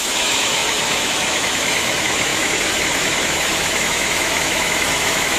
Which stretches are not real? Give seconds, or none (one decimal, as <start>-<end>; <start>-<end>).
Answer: 0.0-5.4